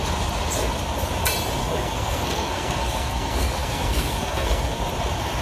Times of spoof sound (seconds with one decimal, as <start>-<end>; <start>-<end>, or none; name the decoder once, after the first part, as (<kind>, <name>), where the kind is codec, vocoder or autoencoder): 1.6-4.8 (codec, SNAC)